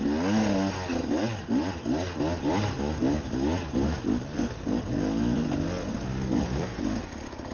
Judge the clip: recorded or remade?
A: recorded